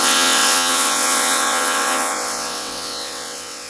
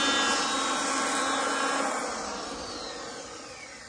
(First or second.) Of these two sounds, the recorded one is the second